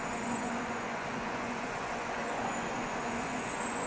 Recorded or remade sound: remade